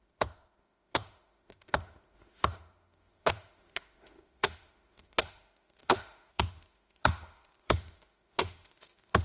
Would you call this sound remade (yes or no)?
yes